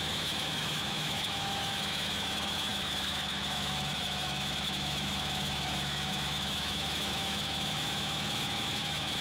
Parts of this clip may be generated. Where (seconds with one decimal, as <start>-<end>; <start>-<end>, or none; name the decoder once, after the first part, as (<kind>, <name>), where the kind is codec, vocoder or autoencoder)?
0.0-9.2 (autoencoder, DAC-VAE)